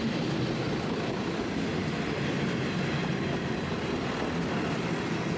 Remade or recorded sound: recorded